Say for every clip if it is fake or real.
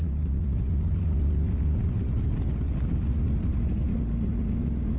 real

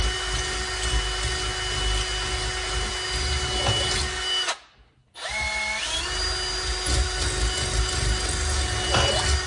real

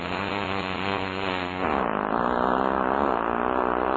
real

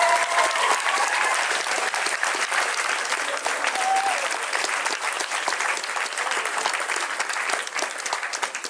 real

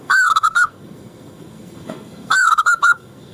fake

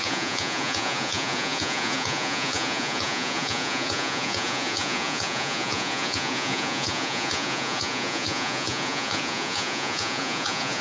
fake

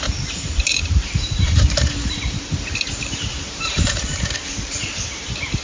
fake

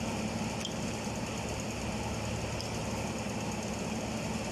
real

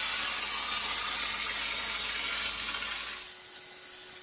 real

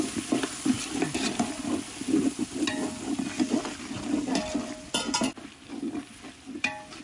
real